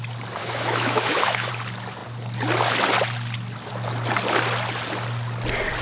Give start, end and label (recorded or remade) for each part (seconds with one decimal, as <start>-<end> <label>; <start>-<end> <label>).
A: 0.0-0.4 recorded; 0.4-1.5 remade; 1.5-5.8 recorded